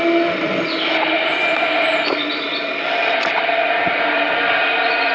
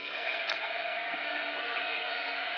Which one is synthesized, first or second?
second